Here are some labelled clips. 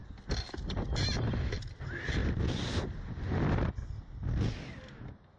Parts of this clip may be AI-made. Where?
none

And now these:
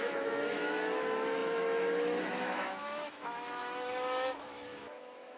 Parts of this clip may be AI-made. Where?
0.0-5.4 (autoencoder, DAC-VAE)

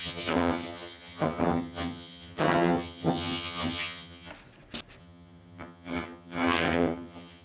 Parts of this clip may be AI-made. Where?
0.0-4.3 (vocoder, HiFi-GAN); 5.0-7.4

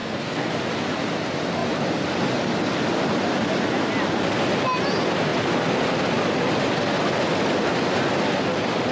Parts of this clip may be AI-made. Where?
0.0-0.5 (codec, SNAC)